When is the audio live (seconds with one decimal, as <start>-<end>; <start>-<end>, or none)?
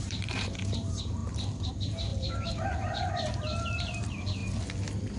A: 1.2-1.7; 4.4-5.2